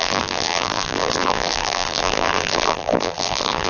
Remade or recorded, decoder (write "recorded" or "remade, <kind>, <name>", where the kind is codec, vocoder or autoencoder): remade, vocoder, BigVGAN v2